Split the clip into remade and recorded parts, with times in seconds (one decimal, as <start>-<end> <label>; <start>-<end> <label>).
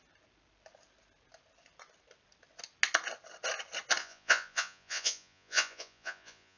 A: 0.0-4.0 recorded; 4.0-6.6 remade